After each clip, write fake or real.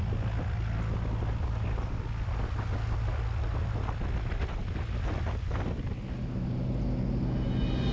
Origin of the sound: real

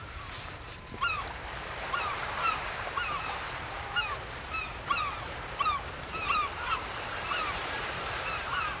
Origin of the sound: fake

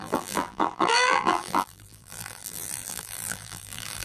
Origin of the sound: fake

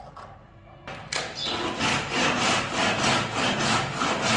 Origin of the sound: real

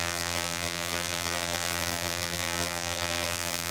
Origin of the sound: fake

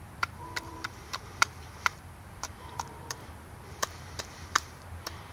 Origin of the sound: fake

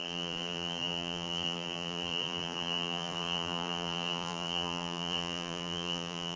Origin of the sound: fake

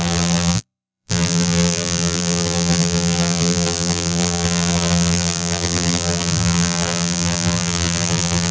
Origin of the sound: fake